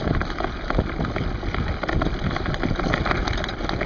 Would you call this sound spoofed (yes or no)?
no